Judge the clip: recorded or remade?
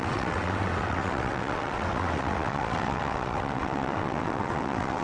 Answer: remade